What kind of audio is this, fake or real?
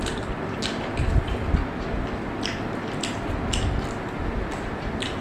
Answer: real